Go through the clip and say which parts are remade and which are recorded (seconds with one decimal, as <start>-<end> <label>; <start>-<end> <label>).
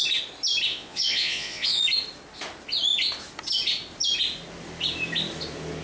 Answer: 0.0-0.7 recorded; 0.7-1.8 remade; 1.8-5.8 recorded